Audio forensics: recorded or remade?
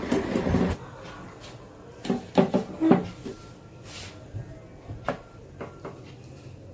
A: recorded